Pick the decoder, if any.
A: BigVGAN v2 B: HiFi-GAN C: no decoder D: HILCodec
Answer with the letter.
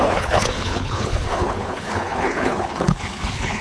D